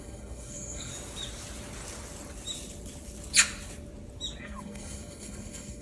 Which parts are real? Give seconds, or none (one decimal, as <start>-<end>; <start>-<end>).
0.9-4.4